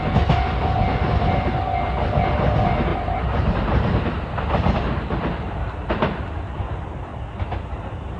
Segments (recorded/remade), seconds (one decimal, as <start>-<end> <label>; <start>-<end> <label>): 0.0-2.9 recorded; 2.9-6.2 remade; 6.2-7.1 recorded; 7.1-8.2 remade